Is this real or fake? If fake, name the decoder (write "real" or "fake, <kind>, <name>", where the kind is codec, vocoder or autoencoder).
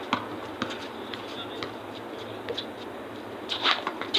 real